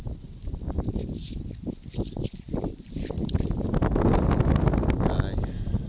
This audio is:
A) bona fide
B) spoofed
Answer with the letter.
A